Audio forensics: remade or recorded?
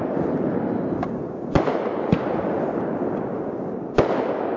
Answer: remade